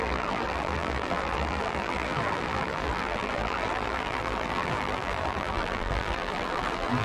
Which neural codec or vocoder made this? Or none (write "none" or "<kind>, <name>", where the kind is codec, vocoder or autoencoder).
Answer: vocoder, BigVGAN v2